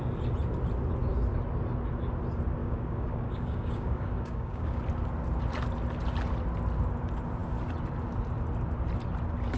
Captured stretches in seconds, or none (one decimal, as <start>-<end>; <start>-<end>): 0.0-2.6; 4.8-9.6